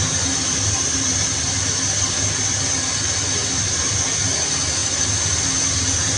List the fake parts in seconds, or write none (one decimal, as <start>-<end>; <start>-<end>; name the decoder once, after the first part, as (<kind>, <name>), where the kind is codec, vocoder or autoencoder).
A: none